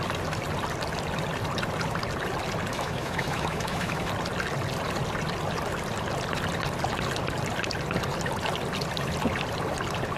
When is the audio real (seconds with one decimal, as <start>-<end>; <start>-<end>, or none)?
0.0-2.7; 4.1-10.2